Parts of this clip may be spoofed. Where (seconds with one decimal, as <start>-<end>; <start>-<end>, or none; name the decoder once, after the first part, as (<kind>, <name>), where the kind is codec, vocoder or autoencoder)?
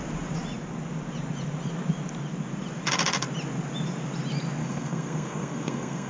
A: 4.6-6.1 (codec, SNAC)